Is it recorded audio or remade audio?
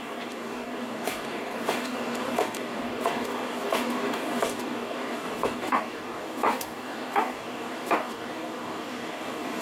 remade